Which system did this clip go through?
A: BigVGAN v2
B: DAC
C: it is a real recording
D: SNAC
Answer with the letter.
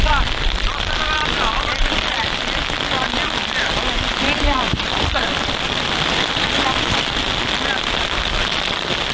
C